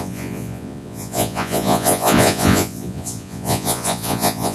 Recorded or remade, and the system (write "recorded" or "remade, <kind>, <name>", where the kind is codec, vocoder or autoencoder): remade, vocoder, Vocos